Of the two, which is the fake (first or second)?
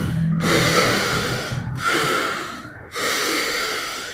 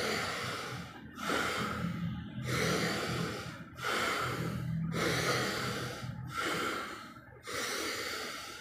first